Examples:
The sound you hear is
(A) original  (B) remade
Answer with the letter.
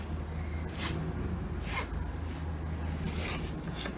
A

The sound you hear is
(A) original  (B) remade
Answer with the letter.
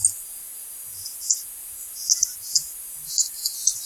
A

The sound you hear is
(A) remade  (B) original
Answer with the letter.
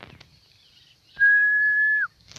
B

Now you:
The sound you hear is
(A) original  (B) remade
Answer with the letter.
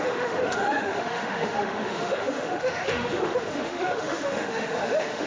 B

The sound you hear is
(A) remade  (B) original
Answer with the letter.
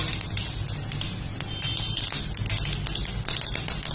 B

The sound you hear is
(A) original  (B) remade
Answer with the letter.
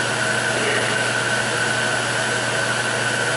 A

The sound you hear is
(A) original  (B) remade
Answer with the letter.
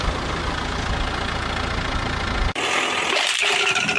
A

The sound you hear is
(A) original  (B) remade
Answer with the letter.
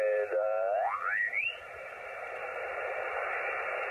A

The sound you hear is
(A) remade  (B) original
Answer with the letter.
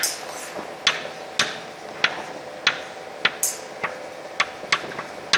B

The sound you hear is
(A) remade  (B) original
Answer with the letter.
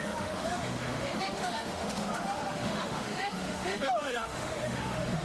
A